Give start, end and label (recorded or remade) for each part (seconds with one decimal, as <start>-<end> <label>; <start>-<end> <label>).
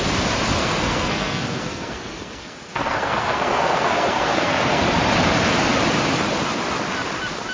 0.0-0.6 recorded; 0.6-4.8 remade; 4.8-7.5 recorded